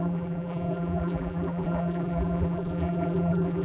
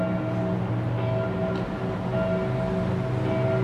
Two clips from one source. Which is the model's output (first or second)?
first